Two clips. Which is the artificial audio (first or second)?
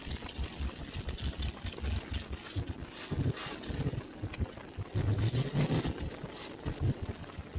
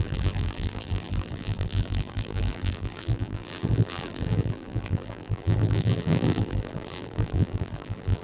second